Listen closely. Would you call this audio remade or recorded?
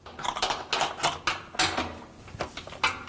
recorded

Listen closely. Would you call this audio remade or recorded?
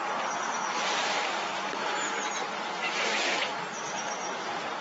recorded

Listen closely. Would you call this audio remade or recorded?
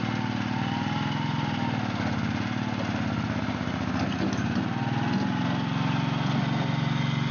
recorded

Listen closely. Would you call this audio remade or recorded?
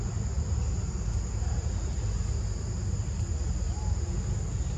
recorded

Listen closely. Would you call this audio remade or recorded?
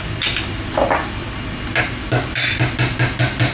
recorded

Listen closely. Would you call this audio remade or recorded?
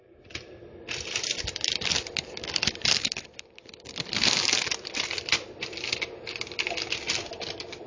recorded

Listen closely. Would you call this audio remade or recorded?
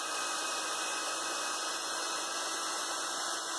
remade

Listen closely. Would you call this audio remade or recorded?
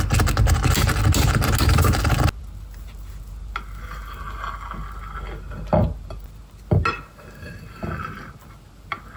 recorded